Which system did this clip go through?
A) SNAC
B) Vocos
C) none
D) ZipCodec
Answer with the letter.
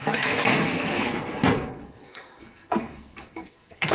A